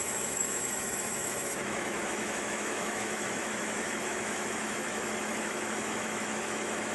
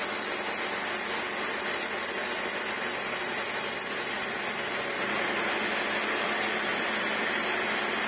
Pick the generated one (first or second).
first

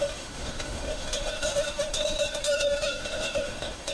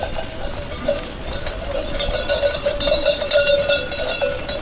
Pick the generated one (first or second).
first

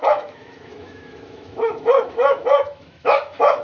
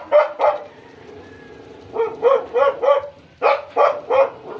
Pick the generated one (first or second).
first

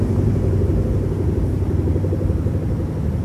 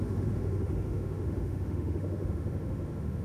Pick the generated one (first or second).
second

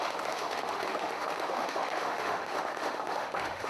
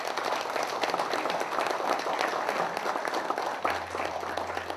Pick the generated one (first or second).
first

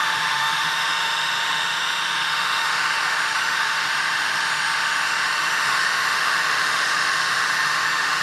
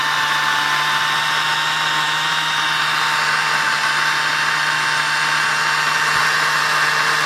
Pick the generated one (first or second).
first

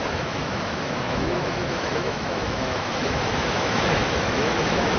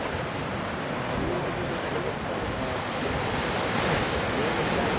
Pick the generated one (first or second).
first